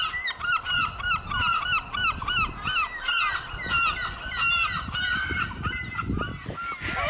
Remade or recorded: recorded